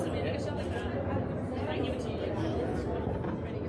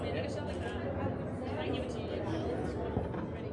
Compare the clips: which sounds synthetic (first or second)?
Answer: first